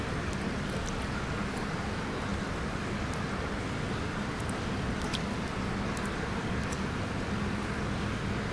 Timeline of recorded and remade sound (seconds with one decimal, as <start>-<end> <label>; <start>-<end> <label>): 0.0-8.5 recorded